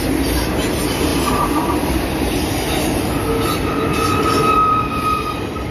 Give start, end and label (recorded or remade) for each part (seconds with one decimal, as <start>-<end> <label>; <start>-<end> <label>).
0.0-5.7 recorded